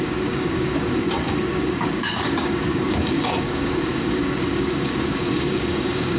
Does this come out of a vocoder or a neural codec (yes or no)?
yes